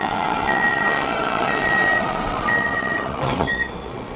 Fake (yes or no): yes